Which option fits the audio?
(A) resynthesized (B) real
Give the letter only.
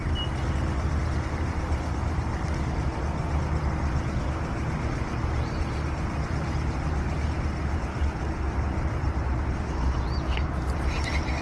B